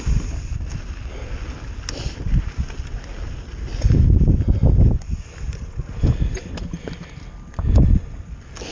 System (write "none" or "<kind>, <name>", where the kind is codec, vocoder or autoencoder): none